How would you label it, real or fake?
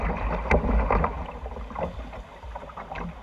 real